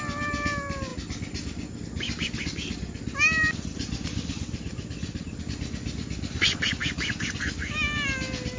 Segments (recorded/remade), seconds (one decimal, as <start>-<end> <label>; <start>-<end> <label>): 0.0-8.6 recorded